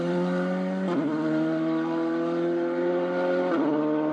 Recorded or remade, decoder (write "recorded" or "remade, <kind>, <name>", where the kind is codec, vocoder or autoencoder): remade, vocoder, BigVGAN v2